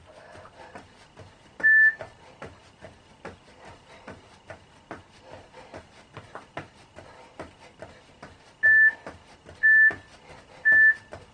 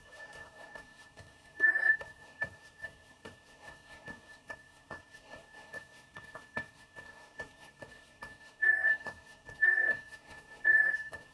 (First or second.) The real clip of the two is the first